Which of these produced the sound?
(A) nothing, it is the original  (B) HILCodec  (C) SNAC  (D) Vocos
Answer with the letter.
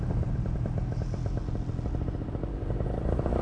A